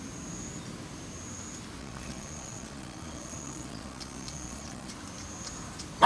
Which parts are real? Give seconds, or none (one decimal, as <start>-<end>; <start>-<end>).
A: 0.0-1.8; 4.9-6.1